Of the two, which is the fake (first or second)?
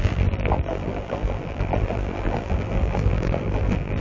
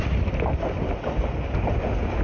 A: first